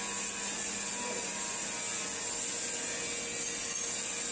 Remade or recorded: recorded